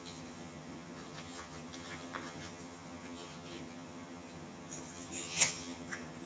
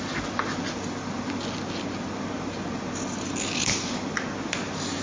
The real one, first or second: second